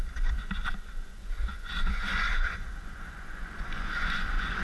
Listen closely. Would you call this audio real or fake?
fake